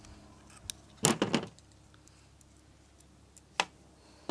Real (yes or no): yes